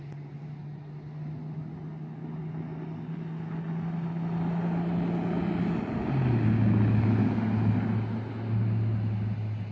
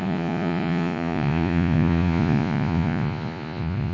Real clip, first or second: first